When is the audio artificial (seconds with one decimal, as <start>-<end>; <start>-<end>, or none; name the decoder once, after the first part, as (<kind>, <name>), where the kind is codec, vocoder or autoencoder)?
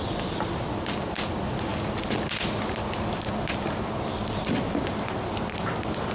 none